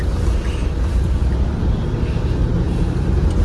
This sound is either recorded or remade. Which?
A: recorded